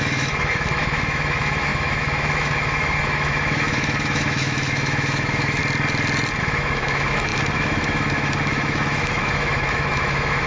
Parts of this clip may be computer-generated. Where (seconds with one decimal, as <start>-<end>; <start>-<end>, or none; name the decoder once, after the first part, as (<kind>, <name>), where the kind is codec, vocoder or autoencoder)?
0.0-5.6 (autoencoder, DAC-VAE); 6.4-10.5